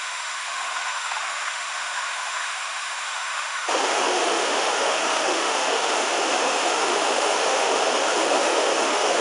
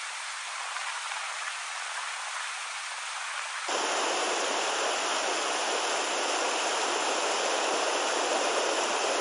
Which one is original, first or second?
second